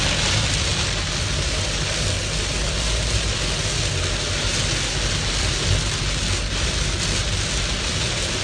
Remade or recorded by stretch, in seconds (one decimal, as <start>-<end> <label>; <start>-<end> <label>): 0.0-8.4 recorded